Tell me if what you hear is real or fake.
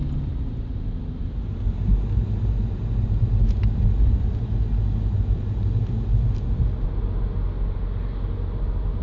real